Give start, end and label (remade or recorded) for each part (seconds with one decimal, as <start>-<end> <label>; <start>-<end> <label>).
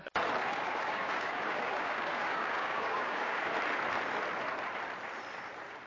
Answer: 0.0-0.4 recorded; 0.4-3.5 remade; 3.5-5.9 recorded